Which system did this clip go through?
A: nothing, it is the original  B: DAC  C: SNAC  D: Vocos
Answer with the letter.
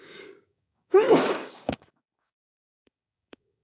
B